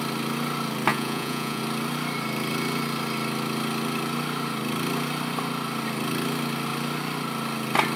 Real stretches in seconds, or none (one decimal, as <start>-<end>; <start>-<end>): 0.0-0.9; 1.6-8.0